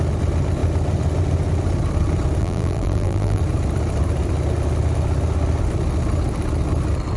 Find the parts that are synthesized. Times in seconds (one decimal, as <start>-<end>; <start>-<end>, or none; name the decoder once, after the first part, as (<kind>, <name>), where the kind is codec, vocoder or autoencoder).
2.4-3.4 (vocoder, BigVGAN v2)